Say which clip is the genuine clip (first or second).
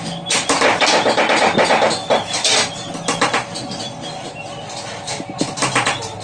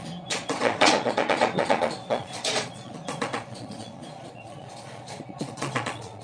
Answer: first